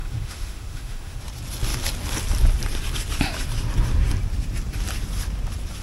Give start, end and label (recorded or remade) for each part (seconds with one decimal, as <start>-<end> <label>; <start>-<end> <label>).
0.0-1.2 remade; 1.2-5.8 recorded